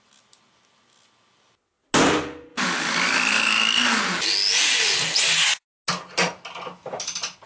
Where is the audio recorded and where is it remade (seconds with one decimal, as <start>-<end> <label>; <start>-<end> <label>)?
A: 0.0-2.5 recorded; 2.5-4.0 remade; 4.0-7.5 recorded